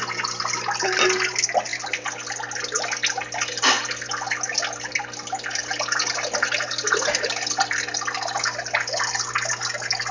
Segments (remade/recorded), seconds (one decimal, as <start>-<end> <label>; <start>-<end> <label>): 0.0-10.1 recorded